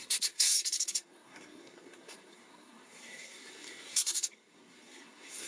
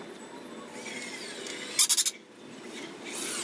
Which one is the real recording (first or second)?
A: second